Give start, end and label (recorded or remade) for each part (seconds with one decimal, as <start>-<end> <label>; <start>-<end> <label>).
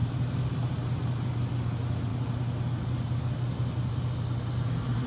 0.0-5.1 recorded